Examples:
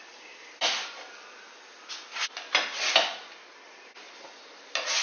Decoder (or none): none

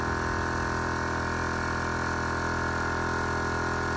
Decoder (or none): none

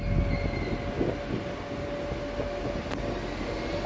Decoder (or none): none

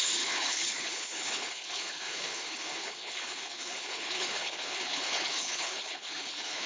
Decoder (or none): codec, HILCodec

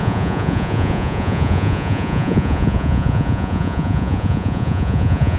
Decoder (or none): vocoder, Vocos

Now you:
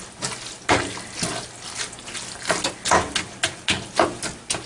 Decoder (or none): none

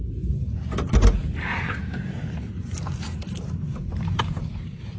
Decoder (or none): vocoder, BigVGAN v2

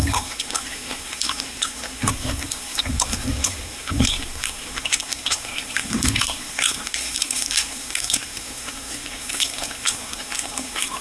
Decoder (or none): codec, SNAC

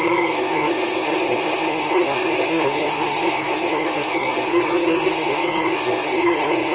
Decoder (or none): codec, SNAC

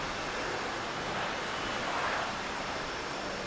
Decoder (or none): none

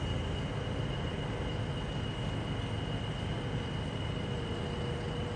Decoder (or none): none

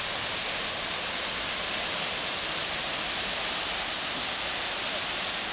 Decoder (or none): none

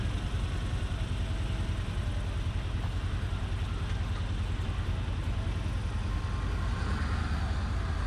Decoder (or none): none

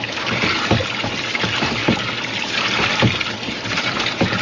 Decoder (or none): none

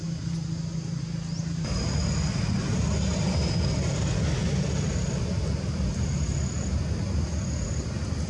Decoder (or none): none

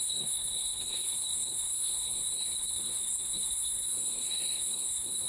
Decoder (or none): codec, SNAC